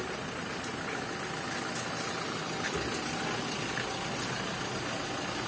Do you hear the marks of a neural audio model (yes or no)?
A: no